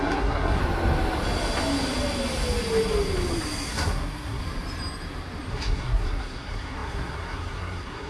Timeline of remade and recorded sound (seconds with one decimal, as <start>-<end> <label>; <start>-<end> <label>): 0.0-0.6 remade; 0.6-3.7 recorded; 3.7-4.4 remade; 4.4-5.5 recorded; 5.5-8.1 remade